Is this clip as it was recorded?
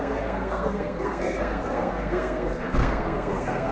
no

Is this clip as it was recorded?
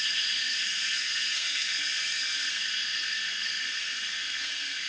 no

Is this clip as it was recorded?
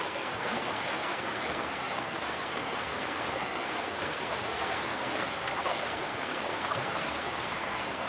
no